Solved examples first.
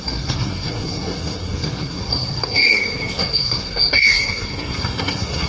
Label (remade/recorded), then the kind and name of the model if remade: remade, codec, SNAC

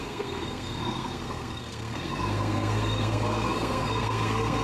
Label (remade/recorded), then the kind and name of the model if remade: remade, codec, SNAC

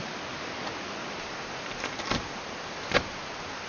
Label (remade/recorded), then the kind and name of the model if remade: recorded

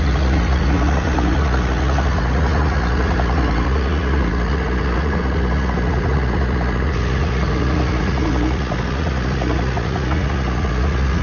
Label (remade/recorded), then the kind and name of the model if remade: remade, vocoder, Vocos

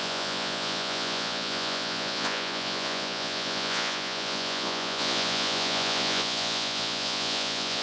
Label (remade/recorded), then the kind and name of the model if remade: remade, vocoder, Vocos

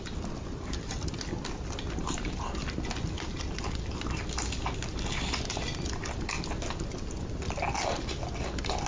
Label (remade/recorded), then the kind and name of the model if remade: recorded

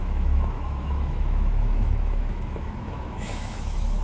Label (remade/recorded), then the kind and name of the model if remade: remade, autoencoder, DAC-VAE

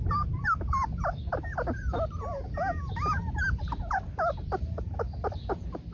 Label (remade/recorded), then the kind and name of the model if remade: recorded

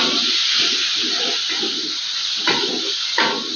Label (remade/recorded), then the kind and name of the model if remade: recorded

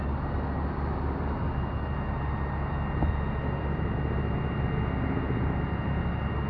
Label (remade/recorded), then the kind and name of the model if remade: recorded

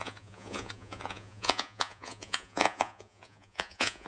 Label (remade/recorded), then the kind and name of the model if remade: remade, vocoder, Vocos